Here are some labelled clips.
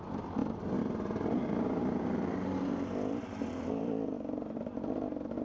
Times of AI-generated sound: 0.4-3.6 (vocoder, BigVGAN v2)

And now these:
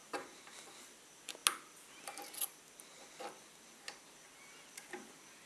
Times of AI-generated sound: none

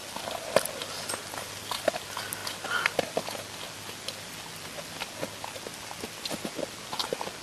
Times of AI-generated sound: none

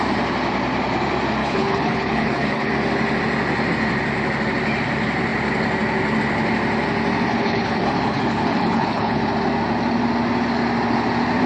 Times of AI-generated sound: 1.4-2.7 (codec, HILCodec); 7.3-9.2

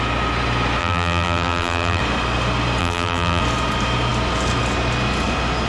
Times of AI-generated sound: 0.8-2.0 (vocoder, BigVGAN v2); 2.8-3.4

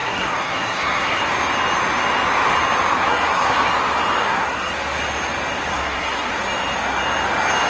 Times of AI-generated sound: 0.0-1.2 (codec, SNAC); 3.0-3.7; 4.2-4.7; 5.7-6.3